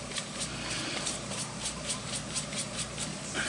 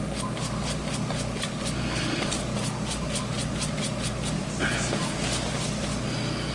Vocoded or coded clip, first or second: first